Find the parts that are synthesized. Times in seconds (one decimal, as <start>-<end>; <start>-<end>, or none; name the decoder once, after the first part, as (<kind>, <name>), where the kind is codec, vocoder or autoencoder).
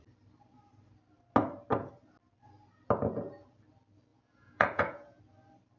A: 4.1-5.2 (vocoder, Vocos)